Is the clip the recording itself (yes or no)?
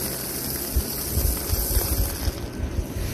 yes